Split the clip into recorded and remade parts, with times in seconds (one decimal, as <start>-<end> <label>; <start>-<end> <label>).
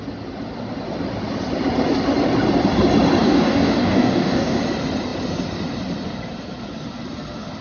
0.0-3.2 recorded; 3.2-4.6 remade; 4.6-7.6 recorded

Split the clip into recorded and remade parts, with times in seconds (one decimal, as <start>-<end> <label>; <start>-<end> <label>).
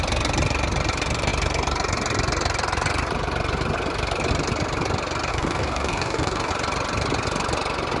0.0-5.3 recorded; 5.3-6.5 remade; 6.5-8.0 recorded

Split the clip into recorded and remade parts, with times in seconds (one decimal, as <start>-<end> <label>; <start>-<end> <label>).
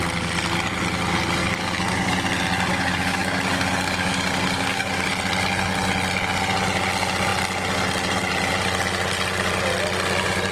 0.0-1.4 recorded; 1.4-2.1 remade; 2.1-2.7 recorded; 2.7-5.1 remade; 5.1-10.5 recorded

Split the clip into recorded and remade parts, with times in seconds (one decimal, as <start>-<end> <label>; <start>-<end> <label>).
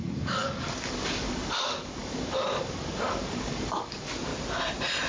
0.0-4.3 remade; 4.3-5.1 recorded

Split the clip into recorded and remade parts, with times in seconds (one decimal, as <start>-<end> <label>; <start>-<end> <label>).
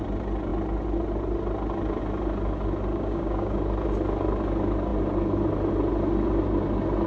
0.0-2.9 recorded; 2.9-3.6 remade; 3.6-7.1 recorded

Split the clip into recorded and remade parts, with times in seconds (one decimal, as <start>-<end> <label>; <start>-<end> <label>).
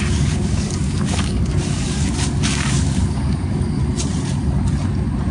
0.0-3.8 remade; 3.8-5.3 recorded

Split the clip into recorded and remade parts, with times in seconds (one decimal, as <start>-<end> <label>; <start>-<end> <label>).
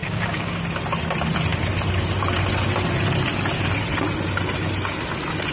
0.0-0.6 remade; 0.6-5.5 recorded